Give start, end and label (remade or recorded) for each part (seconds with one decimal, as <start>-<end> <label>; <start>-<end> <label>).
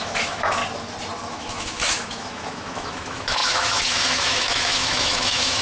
0.0-0.6 remade; 0.6-1.3 recorded; 1.3-5.6 remade